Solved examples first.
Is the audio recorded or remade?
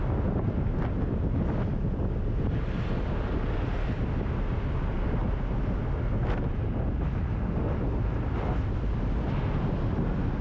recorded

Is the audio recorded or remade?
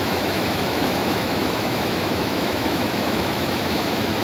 remade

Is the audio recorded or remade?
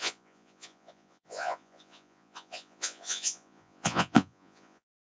remade